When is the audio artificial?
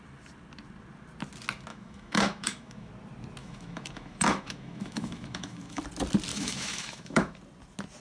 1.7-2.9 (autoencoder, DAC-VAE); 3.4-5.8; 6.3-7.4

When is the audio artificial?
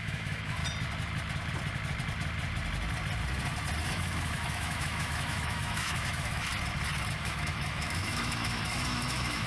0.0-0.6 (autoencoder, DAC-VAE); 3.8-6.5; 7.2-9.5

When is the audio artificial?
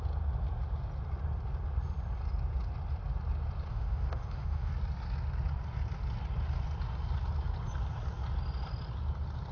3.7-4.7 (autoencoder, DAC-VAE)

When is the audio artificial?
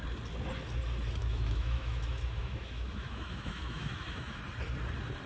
1.2-4.4 (autoencoder, DAC-VAE)